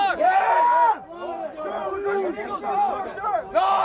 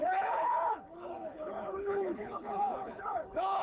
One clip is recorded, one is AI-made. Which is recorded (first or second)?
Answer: first